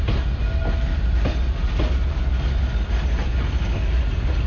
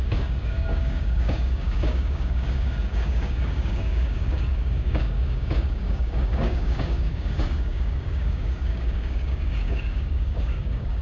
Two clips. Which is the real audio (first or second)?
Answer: first